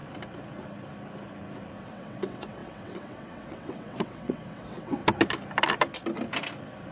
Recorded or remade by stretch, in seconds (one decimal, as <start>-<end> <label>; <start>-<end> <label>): 0.0-1.8 recorded; 1.8-5.0 remade; 5.0-6.9 recorded

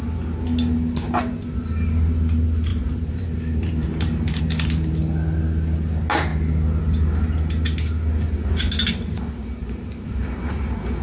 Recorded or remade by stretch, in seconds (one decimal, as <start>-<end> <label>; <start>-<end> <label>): 0.0-2.7 recorded; 2.7-4.4 remade; 4.4-9.6 recorded; 9.6-10.4 remade; 10.4-11.0 recorded